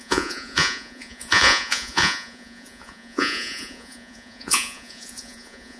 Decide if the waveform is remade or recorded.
remade